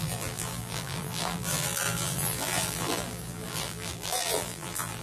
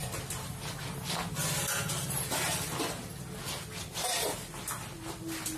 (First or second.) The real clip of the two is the second